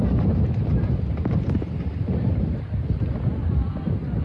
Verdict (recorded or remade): recorded